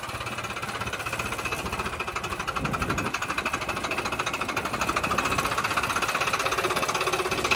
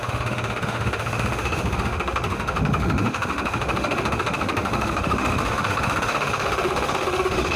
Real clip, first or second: first